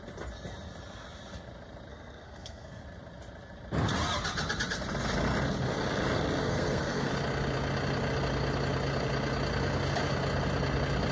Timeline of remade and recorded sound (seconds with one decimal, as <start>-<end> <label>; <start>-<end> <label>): 0.0-1.9 recorded; 1.9-2.8 remade; 2.8-6.4 recorded; 6.4-7.1 remade; 7.1-11.1 recorded